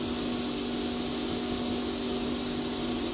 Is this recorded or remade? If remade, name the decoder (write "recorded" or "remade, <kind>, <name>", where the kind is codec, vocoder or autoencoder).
recorded